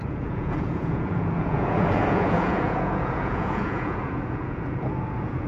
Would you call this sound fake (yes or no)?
yes